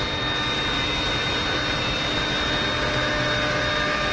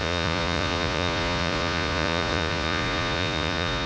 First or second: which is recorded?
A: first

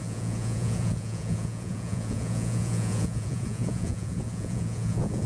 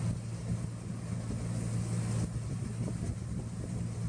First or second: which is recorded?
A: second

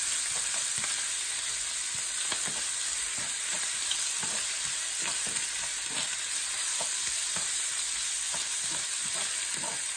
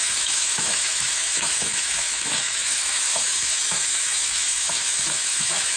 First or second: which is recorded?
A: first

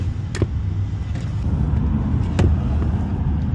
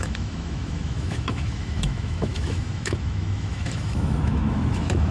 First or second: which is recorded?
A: first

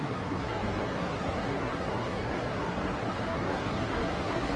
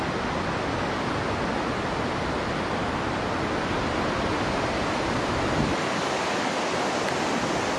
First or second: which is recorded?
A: second